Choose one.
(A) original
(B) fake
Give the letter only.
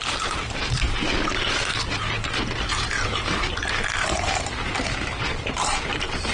B